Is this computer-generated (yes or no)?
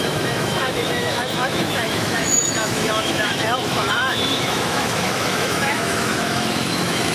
yes